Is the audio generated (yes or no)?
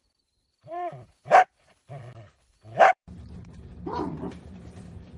yes